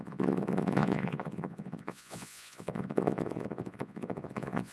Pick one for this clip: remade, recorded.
remade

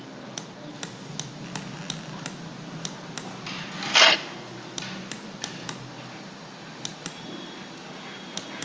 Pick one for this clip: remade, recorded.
recorded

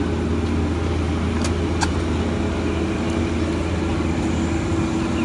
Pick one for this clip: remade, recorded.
recorded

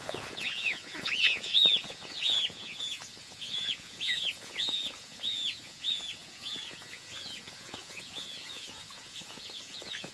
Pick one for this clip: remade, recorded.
remade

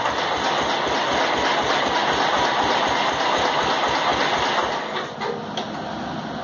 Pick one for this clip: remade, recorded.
recorded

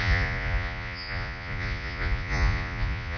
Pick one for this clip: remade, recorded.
remade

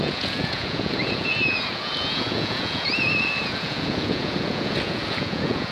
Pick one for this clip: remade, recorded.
remade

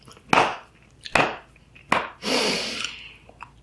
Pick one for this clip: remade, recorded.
recorded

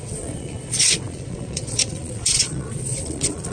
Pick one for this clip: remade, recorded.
remade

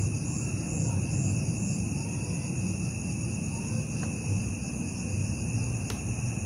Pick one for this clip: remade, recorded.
recorded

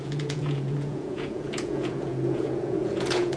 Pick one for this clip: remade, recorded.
remade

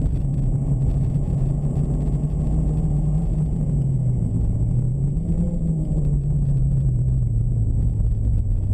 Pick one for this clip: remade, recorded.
remade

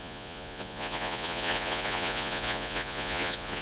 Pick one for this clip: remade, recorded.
remade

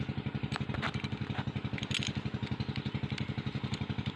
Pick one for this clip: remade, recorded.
recorded